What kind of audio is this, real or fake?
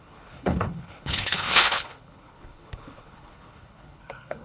fake